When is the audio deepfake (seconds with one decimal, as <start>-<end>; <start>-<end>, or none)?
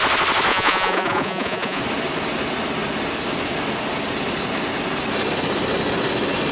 0.5-1.8